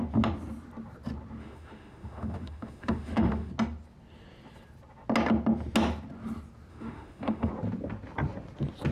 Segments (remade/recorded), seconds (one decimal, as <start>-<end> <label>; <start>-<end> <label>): 0.0-1.4 recorded; 1.4-3.5 remade; 3.5-6.7 recorded; 6.7-7.5 remade; 7.5-8.9 recorded